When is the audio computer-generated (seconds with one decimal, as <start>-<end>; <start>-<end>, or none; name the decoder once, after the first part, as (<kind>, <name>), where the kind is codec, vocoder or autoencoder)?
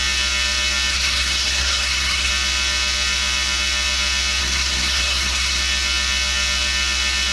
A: 0.9-2.3 (codec, SNAC); 4.4-5.6